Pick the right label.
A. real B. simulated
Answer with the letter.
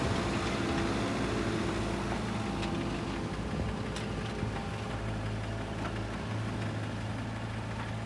A